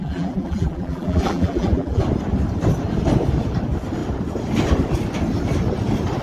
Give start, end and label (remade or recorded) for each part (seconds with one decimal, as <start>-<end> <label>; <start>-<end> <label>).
0.0-2.0 remade; 2.0-6.2 recorded